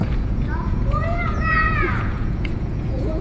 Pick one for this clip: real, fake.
fake